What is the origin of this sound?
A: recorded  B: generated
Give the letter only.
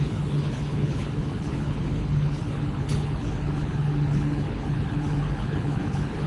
B